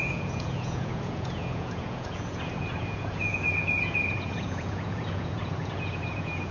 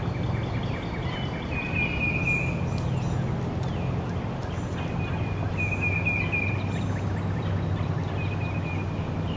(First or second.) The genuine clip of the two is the second